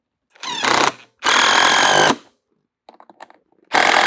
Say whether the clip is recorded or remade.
recorded